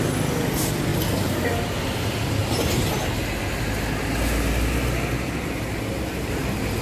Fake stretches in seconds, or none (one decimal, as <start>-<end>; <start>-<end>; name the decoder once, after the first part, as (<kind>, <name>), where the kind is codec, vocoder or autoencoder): 2.4-2.9 (vocoder, BigVGAN v2)